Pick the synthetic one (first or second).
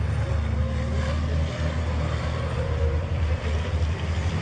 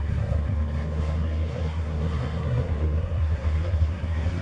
second